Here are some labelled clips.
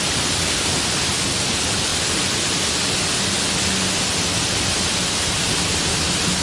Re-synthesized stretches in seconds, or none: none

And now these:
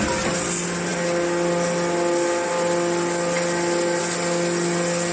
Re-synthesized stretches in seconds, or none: none

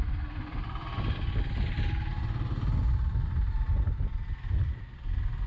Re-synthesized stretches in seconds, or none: none

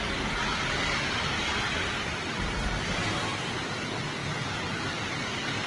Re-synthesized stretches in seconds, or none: none

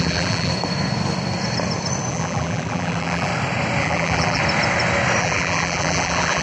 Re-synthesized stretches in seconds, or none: 0.0-0.5 (vocoder, BigVGAN v2); 2.1-3.3; 3.8-4.4; 5.2-6.4